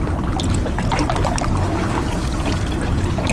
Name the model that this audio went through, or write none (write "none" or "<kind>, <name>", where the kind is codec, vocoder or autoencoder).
none